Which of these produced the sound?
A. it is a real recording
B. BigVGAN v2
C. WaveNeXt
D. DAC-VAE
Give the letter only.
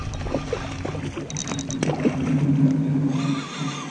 A